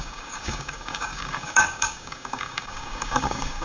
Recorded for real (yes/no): no